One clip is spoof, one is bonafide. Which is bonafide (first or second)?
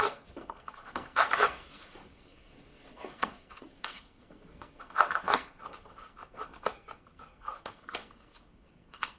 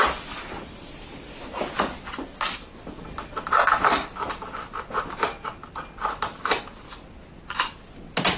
second